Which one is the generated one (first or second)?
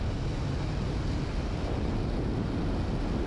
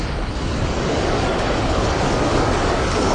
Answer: second